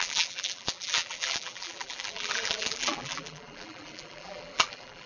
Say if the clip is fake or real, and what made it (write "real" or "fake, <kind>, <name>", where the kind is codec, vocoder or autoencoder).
fake, vocoder, BigVGAN v2